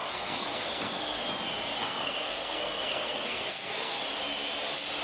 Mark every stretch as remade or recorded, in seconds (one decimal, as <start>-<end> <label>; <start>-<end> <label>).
0.0-1.2 remade; 1.2-1.8 recorded; 1.8-4.0 remade; 4.0-5.0 recorded